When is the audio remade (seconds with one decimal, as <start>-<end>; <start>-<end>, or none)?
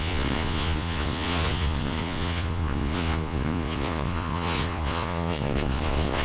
0.0-6.2